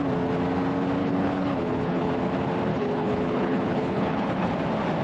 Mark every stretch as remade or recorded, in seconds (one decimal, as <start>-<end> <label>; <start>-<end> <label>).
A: 0.0-1.0 recorded; 1.0-2.1 remade; 2.1-2.7 recorded; 2.7-4.5 remade; 4.5-5.0 recorded